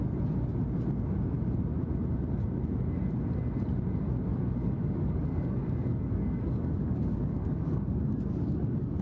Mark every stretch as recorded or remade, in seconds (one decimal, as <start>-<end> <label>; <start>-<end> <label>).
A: 0.0-4.3 recorded; 4.3-9.0 remade